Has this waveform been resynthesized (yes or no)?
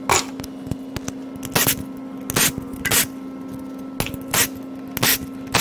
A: no